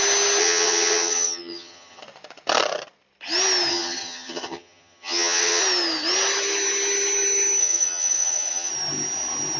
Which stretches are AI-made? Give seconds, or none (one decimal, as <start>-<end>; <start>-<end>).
0.4-2.0; 3.7-5.6; 7.6-8.7